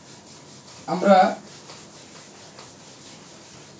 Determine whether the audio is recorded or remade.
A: recorded